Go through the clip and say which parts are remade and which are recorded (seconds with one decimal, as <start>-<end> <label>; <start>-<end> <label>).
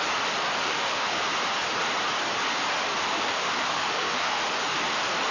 0.0-0.6 recorded; 0.6-1.2 remade; 1.2-3.1 recorded; 3.1-4.4 remade; 4.4-5.3 recorded